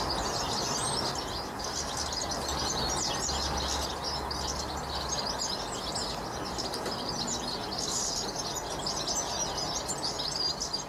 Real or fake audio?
real